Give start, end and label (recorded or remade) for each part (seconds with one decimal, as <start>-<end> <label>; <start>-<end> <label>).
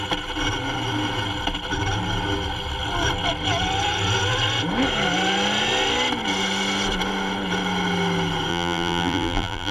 0.0-8.5 recorded; 8.5-9.7 remade